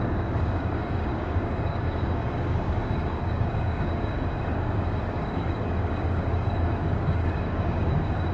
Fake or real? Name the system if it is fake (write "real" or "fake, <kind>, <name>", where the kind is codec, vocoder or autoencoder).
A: fake, codec, DAC